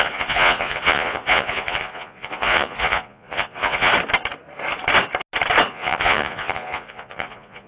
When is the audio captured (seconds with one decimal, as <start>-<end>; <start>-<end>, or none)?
3.9-5.7

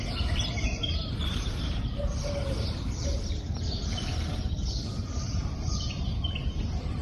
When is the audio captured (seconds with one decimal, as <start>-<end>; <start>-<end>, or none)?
none